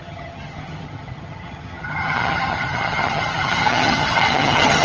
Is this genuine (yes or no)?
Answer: no